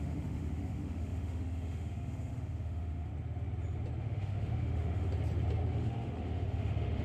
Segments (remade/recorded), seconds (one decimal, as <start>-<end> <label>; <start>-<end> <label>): 0.0-3.1 remade; 3.1-4.0 recorded; 4.0-5.1 remade; 5.1-5.6 recorded; 5.6-7.0 remade